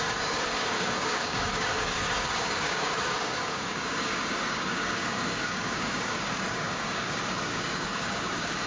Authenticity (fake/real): fake